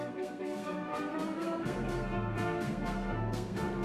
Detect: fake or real fake